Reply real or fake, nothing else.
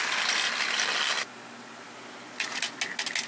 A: real